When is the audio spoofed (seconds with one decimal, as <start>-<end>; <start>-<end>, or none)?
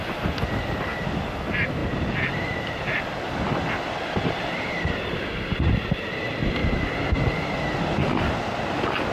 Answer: none